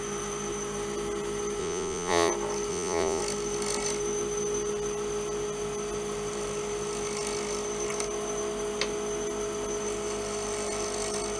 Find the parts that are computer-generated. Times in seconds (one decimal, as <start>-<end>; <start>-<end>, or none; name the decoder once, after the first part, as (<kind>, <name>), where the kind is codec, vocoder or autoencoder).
1.6-2.3 (vocoder, Vocos); 2.7-3.2